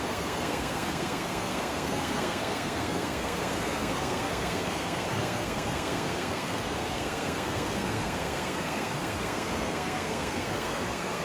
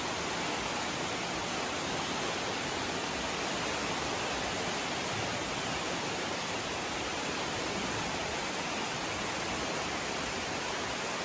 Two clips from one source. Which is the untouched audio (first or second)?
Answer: second